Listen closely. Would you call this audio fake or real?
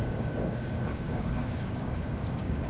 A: fake